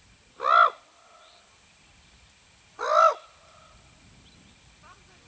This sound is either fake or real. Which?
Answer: real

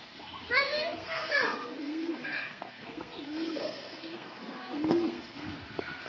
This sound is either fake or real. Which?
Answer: fake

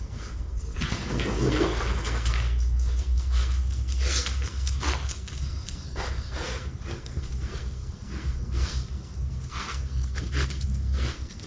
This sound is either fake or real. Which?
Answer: fake